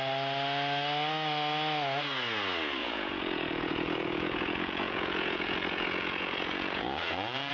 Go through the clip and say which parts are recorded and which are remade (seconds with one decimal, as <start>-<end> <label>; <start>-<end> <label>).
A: 0.0-2.8 recorded; 2.8-7.5 remade